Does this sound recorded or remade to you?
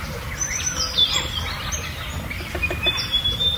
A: recorded